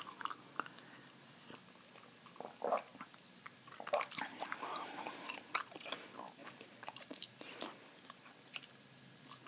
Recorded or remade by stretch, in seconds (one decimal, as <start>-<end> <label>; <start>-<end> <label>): 0.0-6.4 recorded; 6.4-7.4 remade; 7.4-9.5 recorded